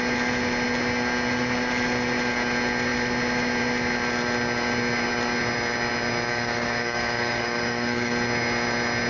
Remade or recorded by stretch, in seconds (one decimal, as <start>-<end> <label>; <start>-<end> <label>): 0.0-6.3 recorded; 6.3-8.1 remade; 8.1-9.1 recorded